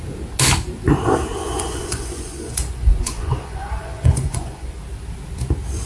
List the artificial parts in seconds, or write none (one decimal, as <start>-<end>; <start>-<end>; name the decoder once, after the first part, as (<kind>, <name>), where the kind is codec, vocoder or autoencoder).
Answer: 1.4-4.7 (vocoder, Vocos)